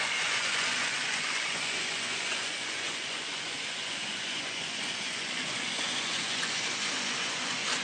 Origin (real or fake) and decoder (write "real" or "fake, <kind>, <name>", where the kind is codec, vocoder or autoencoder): fake, vocoder, Vocos